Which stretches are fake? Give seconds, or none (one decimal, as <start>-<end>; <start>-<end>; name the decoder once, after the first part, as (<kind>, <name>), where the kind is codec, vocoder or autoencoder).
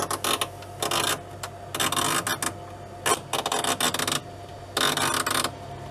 none